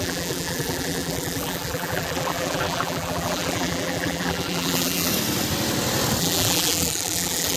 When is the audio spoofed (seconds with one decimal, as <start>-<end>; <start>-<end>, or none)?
0.0-5.1; 6.2-7.6